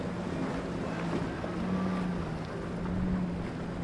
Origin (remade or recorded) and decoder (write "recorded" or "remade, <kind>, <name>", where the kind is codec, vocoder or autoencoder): recorded